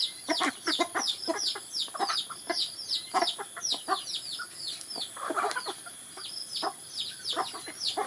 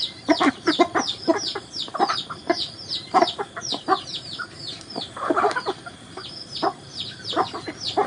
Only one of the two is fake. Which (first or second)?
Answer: second